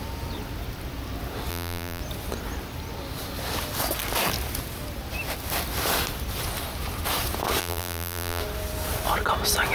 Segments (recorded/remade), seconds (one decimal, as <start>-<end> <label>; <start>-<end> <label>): 0.0-1.5 recorded; 1.5-2.0 remade; 2.0-7.6 recorded; 7.6-8.4 remade; 8.4-9.7 recorded